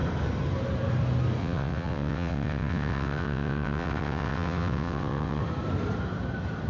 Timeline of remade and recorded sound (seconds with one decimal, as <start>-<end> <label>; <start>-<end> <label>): 0.0-1.4 recorded; 1.4-5.4 remade; 5.4-6.7 recorded